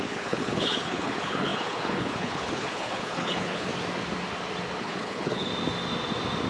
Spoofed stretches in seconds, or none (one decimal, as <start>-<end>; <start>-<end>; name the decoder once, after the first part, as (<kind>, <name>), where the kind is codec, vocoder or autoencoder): 0.0-3.7 (codec, HILCodec); 4.8-5.5